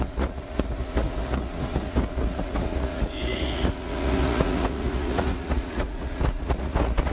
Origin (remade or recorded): remade